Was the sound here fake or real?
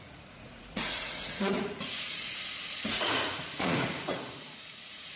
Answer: fake